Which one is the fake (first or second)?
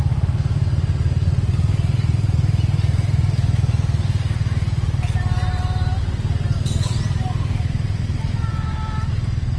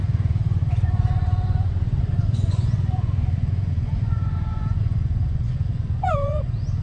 second